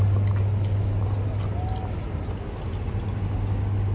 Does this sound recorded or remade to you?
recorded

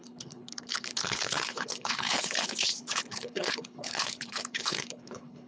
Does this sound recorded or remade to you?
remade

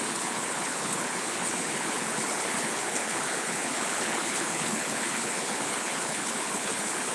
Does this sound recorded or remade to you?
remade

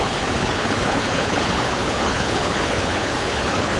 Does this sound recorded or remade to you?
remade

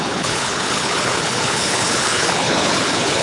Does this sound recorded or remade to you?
remade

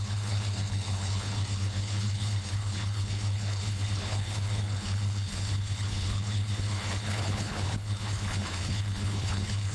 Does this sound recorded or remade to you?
remade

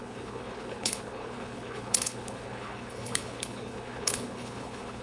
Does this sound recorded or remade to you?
remade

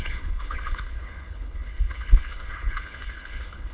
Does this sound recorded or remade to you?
remade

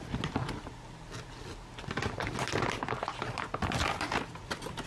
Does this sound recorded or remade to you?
recorded